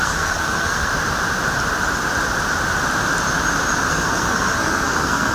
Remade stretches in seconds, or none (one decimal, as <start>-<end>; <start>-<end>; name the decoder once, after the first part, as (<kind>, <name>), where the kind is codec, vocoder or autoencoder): 0.0-0.9 (codec, SNAC); 3.9-5.3